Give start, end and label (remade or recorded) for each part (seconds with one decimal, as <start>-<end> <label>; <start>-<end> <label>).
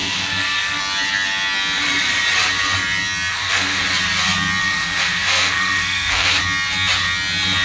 0.0-0.8 remade; 0.8-3.3 recorded; 3.3-3.8 remade; 3.8-4.6 recorded; 4.6-6.4 remade; 6.4-7.6 recorded